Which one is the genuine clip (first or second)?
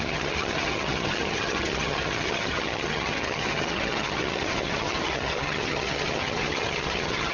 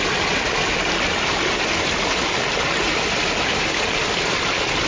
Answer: second